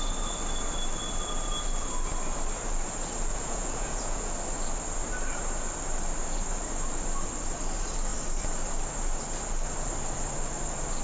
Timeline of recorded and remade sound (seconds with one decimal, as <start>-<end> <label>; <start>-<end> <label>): 0.0-3.3 recorded; 3.3-4.3 remade; 4.3-11.0 recorded